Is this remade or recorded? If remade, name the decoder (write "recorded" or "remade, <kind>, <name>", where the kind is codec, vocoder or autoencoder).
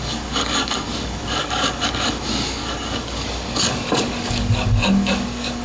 remade, codec, DAC